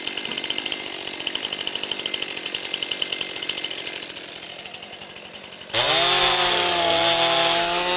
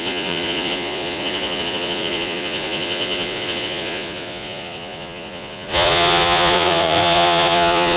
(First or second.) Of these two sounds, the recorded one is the first